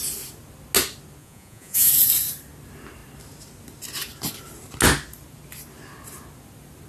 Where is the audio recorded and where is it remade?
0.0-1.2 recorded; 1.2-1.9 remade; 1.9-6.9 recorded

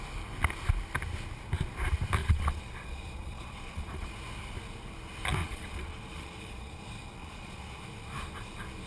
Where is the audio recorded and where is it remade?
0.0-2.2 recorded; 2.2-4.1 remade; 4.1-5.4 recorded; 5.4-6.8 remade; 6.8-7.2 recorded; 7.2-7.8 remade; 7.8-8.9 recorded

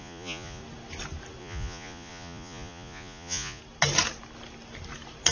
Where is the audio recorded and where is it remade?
0.0-0.6 remade; 0.6-1.4 recorded; 1.4-3.6 remade; 3.6-5.3 recorded